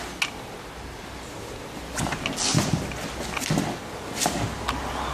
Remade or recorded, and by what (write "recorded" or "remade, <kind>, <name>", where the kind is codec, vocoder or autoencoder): recorded